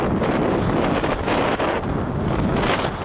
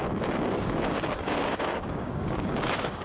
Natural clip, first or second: first